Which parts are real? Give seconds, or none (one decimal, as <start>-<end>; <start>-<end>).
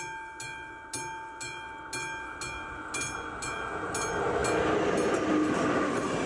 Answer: 0.0-6.3